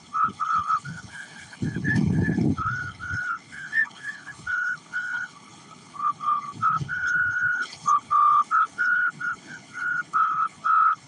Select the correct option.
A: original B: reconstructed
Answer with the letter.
B